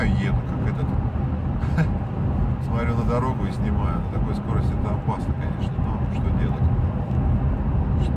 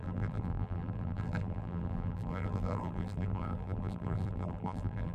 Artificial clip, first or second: second